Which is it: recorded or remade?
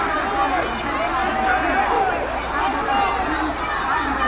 recorded